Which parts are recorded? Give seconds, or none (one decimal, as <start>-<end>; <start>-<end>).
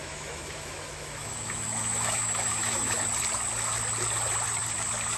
3.0-5.2